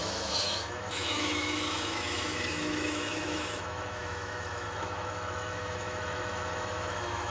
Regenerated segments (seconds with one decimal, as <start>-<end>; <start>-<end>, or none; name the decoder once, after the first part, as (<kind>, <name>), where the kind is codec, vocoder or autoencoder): 0.0-7.3 (autoencoder, DAC-VAE)